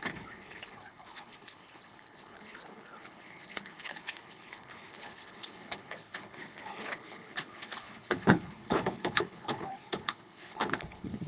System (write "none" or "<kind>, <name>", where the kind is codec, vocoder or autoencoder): codec, HILCodec